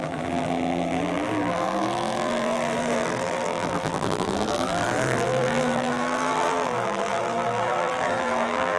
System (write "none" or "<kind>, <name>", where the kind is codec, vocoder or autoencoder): vocoder, BigVGAN v2